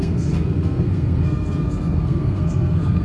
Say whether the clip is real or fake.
fake